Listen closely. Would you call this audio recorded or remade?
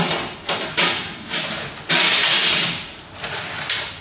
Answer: recorded